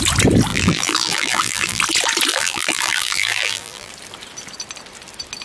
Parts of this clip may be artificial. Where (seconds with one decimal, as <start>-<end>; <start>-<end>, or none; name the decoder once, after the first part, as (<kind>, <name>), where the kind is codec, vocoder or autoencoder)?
0.5-1.8 (vocoder, BigVGAN v2); 2.3-3.9